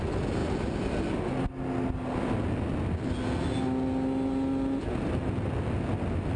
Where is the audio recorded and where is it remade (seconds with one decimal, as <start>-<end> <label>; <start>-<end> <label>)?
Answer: 0.0-6.4 recorded